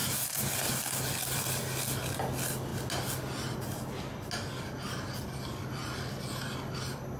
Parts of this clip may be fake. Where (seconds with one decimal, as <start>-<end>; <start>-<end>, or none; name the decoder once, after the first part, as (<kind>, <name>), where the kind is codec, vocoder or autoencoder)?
0.0-0.5 (vocoder, BigVGAN v2)